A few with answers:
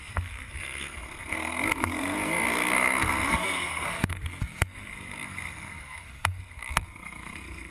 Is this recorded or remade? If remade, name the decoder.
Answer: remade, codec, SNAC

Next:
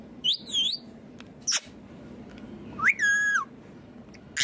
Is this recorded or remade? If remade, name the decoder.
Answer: recorded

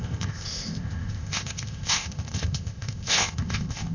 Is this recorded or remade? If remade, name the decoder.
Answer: remade, codec, ZipCodec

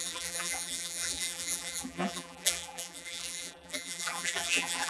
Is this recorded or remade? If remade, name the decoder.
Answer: remade, vocoder, BigVGAN v2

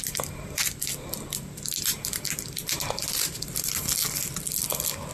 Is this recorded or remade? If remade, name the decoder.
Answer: recorded